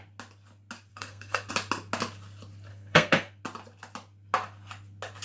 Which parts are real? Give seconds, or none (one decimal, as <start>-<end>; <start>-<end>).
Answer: 0.0-0.9; 1.5-2.7; 3.4-5.2